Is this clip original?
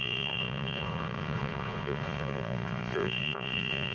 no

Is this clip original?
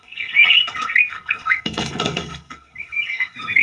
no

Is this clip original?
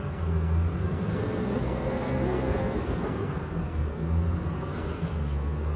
no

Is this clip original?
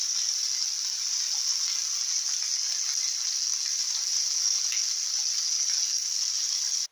yes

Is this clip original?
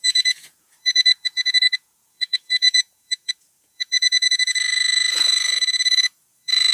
no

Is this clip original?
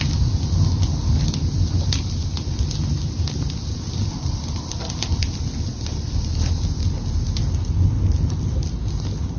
yes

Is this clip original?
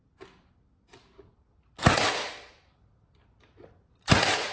yes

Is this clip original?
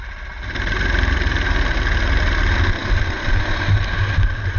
yes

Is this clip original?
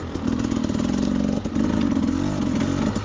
yes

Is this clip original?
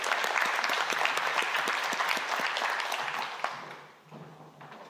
yes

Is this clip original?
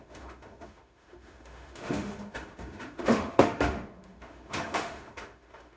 no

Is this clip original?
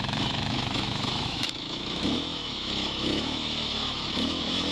no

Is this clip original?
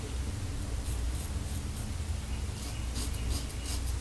yes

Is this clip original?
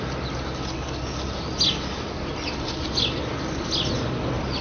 yes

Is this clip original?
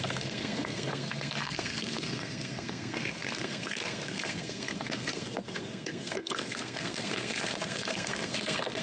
no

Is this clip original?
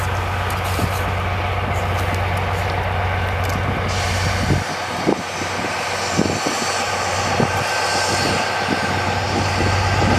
yes